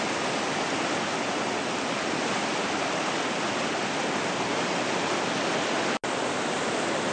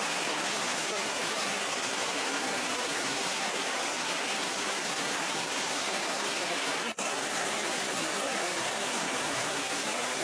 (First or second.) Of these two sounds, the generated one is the second